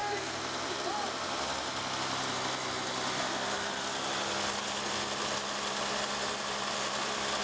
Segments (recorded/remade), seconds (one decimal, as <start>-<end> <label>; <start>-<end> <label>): 0.0-7.4 recorded